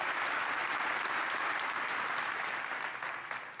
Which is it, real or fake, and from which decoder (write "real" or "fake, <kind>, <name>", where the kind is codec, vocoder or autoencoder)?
fake, vocoder, BigVGAN v2